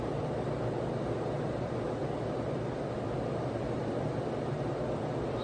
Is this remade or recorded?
remade